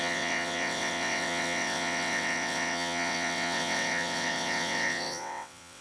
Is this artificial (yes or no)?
yes